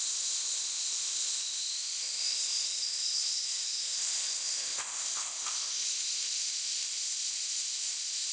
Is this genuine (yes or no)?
no